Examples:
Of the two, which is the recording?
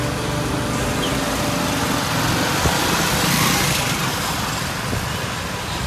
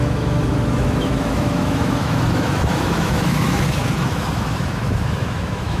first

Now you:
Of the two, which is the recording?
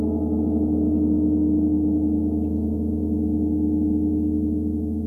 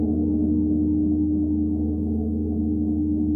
first